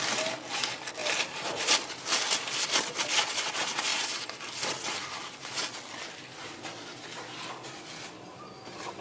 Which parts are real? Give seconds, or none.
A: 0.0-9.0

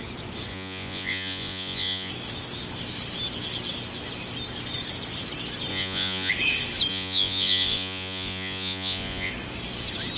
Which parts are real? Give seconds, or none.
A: 0.0-0.5; 2.1-5.7; 6.3-6.9; 9.3-10.2